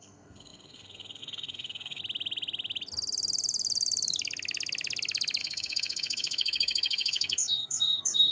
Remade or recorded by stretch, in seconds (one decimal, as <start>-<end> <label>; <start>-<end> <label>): 0.0-2.0 remade; 2.0-5.4 recorded; 5.4-8.3 remade